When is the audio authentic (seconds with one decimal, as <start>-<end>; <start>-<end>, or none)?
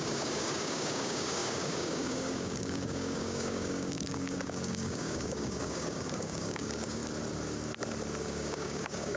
7.0-8.2